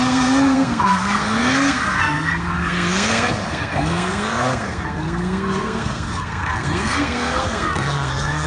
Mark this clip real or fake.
fake